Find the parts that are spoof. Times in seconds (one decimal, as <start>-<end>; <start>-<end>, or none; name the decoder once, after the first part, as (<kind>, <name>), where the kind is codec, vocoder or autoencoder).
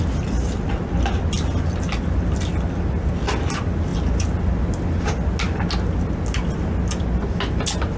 none